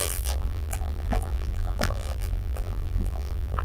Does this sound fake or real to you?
fake